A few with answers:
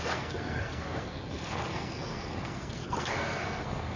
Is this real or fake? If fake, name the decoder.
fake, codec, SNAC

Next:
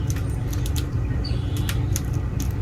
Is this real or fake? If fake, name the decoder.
real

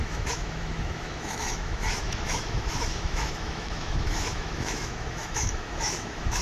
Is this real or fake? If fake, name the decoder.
fake, autoencoder, DAC-VAE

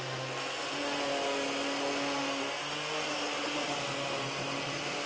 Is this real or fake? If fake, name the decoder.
real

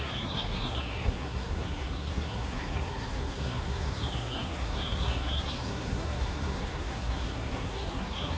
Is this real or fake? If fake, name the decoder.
fake, codec, SNAC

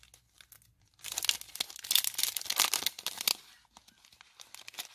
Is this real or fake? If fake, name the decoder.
real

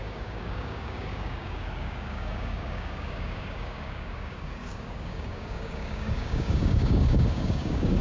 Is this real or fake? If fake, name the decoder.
fake, codec, DAC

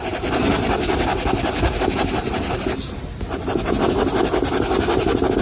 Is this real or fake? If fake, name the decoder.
real